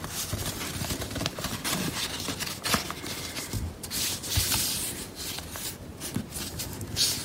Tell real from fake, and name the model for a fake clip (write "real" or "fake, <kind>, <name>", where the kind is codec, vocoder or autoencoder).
real